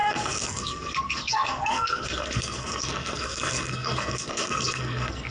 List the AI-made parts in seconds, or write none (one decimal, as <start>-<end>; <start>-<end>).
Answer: 0.0-5.3